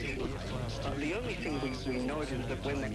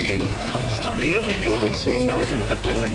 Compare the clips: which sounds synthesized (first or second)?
second